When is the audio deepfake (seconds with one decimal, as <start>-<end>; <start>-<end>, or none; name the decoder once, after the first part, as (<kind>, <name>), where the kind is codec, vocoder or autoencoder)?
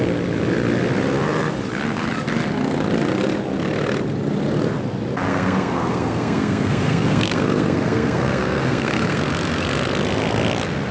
5.3-9.2 (codec, SNAC)